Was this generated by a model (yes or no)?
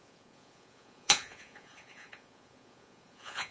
yes